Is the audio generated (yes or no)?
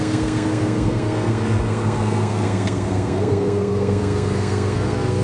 yes